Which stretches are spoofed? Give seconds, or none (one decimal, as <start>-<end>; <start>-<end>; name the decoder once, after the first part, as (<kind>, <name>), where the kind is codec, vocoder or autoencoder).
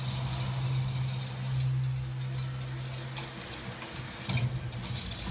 none